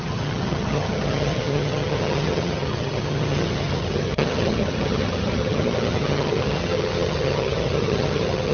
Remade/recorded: remade